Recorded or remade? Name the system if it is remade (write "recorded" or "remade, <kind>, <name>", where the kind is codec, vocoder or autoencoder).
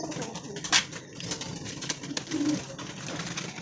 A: recorded